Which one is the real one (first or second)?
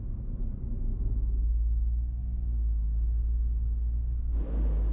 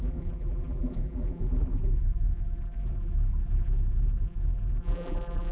first